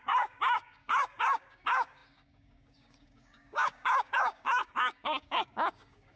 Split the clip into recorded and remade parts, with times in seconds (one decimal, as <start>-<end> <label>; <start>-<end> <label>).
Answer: 0.0-6.2 remade